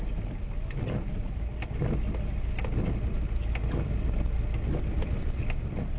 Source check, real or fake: real